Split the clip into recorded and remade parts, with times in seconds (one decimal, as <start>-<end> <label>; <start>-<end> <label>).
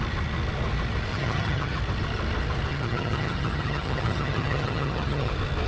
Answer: 0.0-1.1 recorded; 1.1-1.8 remade; 1.8-2.7 recorded; 2.7-5.3 remade; 5.3-5.7 recorded